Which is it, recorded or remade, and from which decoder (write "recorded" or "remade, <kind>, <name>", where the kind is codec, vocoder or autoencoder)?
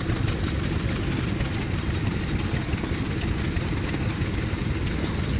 recorded